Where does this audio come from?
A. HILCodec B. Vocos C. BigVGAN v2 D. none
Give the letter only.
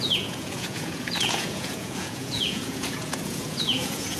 B